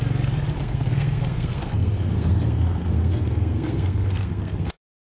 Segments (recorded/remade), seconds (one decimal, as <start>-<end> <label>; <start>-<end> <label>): 0.0-0.6 recorded; 0.6-5.0 remade